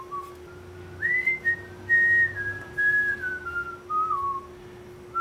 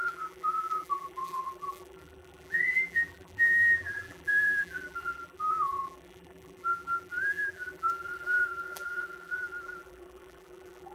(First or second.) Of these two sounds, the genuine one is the first